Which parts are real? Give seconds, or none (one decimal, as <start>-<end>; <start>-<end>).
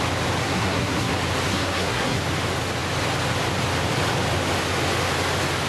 0.0-0.4; 1.1-1.5; 2.2-5.7